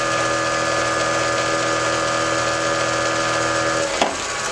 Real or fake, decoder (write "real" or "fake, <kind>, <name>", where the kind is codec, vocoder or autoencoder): real